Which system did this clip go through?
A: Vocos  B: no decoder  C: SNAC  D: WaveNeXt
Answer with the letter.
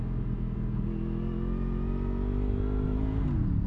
B